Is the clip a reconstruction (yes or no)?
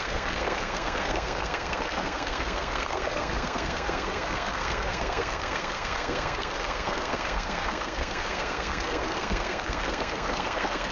yes